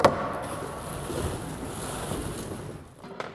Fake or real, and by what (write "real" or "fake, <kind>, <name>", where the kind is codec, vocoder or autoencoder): real